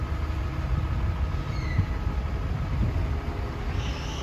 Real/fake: real